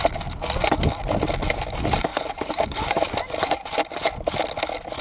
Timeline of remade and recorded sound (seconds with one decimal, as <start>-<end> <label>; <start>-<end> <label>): 0.0-2.1 recorded; 2.1-4.0 remade; 4.0-5.0 recorded